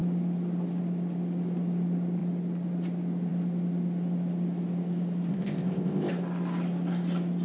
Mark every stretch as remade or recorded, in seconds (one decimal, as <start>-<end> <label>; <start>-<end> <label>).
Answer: 0.0-5.3 recorded; 5.3-6.1 remade; 6.1-7.4 recorded